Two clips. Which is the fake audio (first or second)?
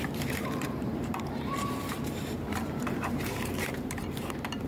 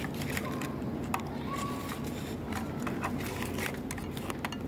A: first